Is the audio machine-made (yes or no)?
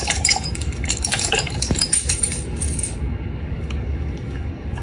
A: yes